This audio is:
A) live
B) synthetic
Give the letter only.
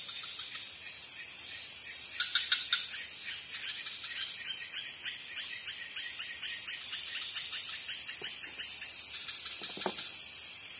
A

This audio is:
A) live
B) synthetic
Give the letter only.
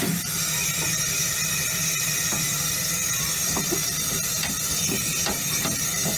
A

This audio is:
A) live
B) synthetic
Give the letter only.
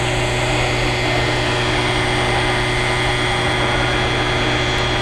A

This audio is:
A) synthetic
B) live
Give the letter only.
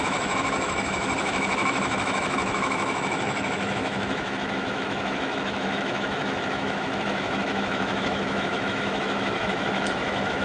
A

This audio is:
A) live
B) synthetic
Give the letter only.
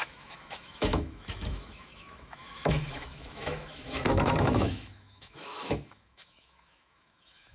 B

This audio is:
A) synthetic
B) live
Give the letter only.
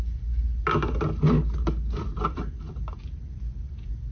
B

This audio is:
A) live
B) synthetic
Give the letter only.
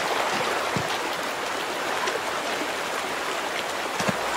A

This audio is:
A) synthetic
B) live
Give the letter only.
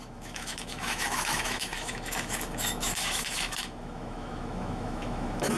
A